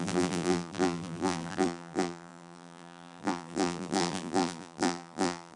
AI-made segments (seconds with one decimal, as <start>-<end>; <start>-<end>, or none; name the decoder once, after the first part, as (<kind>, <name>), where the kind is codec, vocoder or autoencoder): 0.0-5.6 (vocoder, BigVGAN v2)